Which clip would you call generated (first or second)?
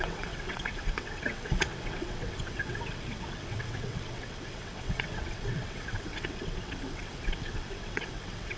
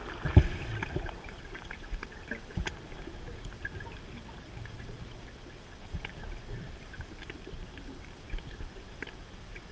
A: first